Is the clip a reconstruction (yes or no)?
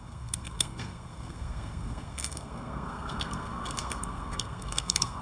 yes